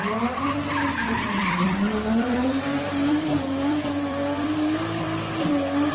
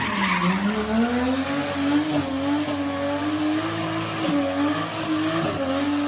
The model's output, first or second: first